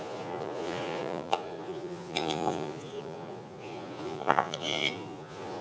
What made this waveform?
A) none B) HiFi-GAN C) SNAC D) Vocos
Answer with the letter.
D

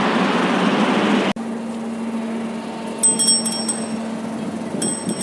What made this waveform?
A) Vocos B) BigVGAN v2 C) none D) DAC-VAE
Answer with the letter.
C